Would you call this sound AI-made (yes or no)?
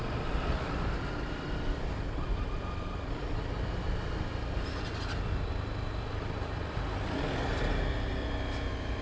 no